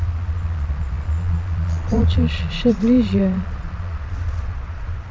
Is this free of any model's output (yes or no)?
no